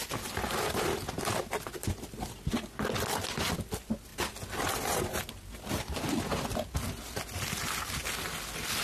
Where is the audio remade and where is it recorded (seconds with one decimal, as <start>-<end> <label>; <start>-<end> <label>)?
0.0-8.8 recorded